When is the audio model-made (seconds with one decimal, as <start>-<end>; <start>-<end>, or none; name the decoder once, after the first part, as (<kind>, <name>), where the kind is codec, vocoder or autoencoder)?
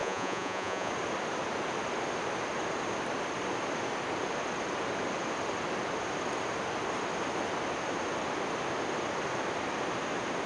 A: 0.0-0.9 (vocoder, Vocos)